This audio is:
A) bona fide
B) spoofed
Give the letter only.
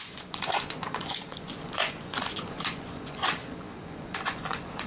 B